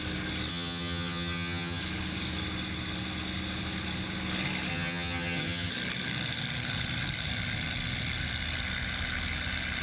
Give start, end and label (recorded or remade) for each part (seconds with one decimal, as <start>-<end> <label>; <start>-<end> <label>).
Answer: 0.0-0.5 recorded; 0.5-1.8 remade; 1.8-4.7 recorded; 4.7-5.7 remade; 5.7-9.8 recorded